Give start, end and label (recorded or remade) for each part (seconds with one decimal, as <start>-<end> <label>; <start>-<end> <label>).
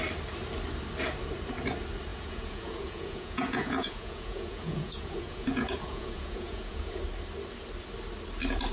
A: 0.0-2.1 recorded; 2.1-7.0 remade; 7.0-8.7 recorded